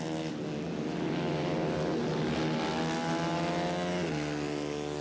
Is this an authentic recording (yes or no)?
yes